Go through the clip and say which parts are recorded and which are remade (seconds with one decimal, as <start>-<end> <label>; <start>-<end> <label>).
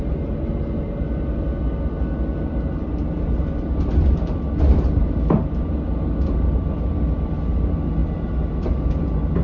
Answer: 0.0-9.4 recorded